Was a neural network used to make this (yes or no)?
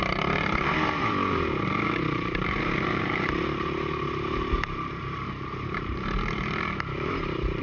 yes